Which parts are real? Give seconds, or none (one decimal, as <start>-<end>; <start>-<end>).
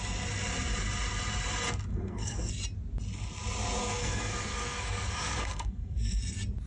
0.0-1.9; 2.5-3.8; 6.2-6.7